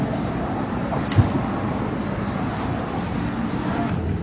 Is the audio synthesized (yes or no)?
yes